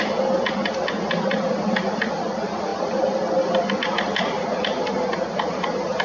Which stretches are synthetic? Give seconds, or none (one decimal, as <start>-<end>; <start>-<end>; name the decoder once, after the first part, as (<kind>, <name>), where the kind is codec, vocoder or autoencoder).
none